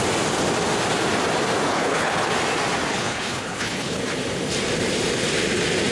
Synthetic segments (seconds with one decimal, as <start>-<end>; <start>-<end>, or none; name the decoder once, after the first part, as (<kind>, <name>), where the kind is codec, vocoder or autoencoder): 1.7-2.3 (codec, HILCodec); 2.9-4.0